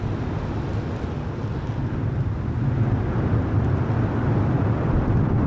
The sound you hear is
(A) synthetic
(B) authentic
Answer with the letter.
B